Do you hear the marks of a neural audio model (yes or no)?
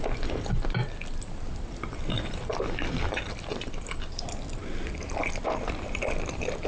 no